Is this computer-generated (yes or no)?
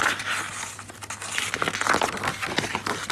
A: no